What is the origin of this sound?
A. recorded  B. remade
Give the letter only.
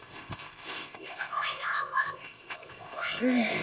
B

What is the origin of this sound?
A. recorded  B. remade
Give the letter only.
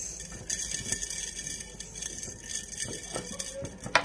A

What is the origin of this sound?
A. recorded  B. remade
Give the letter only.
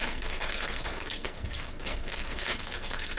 B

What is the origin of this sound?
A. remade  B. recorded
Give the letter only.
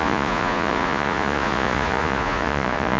A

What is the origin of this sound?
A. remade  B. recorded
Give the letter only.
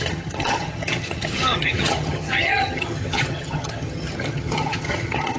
A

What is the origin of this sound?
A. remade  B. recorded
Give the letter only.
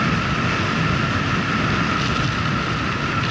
B